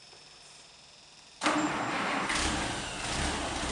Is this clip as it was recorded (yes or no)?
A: yes